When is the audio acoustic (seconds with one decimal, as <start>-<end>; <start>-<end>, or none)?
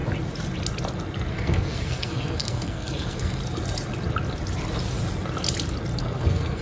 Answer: 0.0-1.3; 3.4-6.0